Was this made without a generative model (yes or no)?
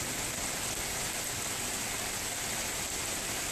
yes